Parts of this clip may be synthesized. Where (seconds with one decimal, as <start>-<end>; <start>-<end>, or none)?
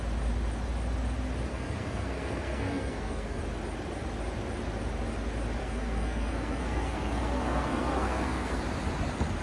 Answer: 1.5-3.4; 5.6-8.6